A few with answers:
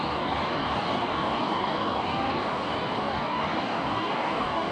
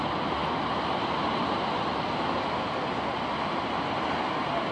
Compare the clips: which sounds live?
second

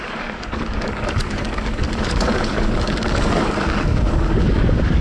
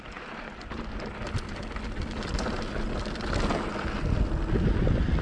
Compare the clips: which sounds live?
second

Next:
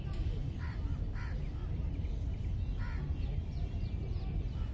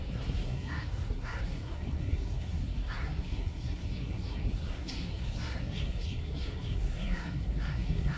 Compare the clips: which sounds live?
first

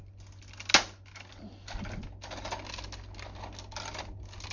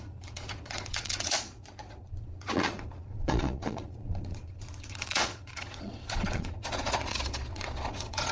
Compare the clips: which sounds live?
first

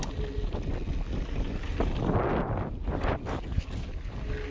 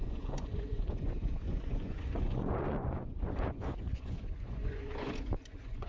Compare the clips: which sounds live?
first